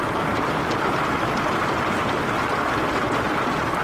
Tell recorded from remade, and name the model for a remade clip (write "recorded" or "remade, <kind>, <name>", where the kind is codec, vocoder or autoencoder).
recorded